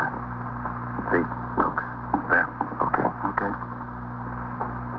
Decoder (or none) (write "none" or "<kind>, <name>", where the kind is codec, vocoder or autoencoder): none